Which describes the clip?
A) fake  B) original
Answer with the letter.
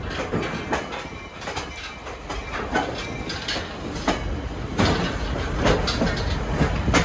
B